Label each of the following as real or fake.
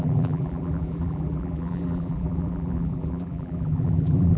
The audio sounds fake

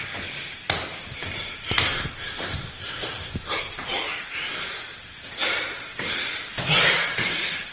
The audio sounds fake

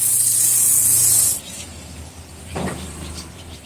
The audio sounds real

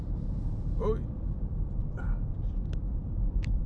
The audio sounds fake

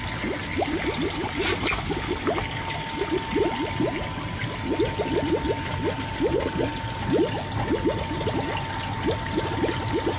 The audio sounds real